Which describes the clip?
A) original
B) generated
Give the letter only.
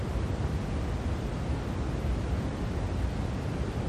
B